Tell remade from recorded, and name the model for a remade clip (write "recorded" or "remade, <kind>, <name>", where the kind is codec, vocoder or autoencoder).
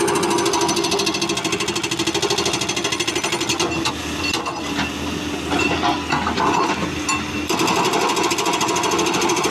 recorded